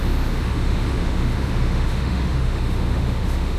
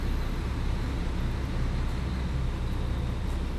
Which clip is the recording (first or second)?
second